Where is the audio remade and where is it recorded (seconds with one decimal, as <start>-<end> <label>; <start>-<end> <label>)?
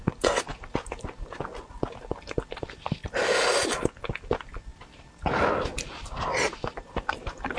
0.0-7.6 recorded